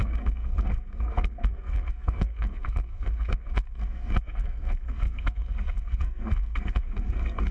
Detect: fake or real fake